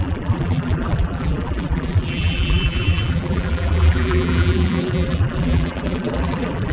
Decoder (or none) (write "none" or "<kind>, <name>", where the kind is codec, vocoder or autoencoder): vocoder, BigVGAN v2